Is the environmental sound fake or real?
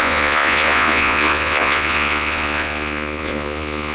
fake